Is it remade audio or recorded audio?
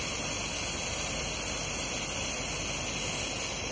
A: recorded